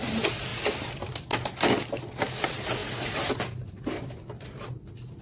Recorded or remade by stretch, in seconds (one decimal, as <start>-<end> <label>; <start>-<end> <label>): 0.0-2.8 recorded; 2.8-3.3 remade; 3.3-5.2 recorded